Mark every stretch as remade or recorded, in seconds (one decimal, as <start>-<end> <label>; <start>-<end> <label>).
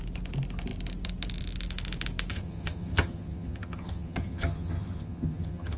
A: 0.0-2.3 recorded; 2.3-5.8 remade